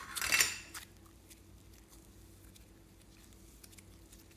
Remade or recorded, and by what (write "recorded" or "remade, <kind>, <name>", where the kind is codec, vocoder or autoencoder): recorded